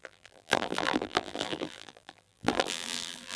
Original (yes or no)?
no